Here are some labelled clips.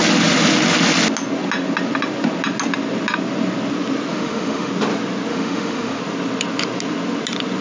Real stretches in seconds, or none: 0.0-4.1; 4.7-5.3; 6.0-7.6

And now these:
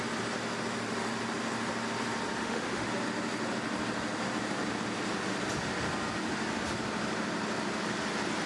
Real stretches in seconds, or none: 0.0-2.4; 2.9-8.5